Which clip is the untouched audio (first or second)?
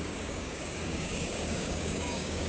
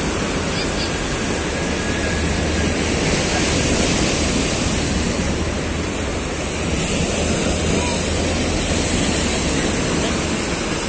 second